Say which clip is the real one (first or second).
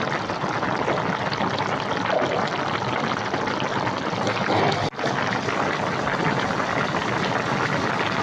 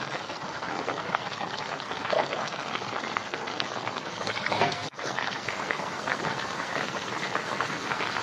first